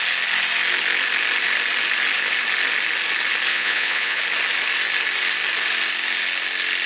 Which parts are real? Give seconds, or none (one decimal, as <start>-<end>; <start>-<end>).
0.0-3.5; 4.2-6.9